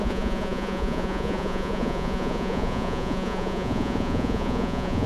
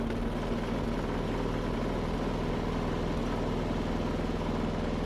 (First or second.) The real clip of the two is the second